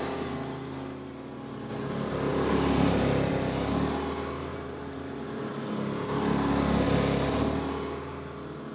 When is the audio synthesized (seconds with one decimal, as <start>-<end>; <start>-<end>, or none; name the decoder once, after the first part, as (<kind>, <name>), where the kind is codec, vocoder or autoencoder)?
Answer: 2.3-3.3 (vocoder, BigVGAN v2); 4.5-5.4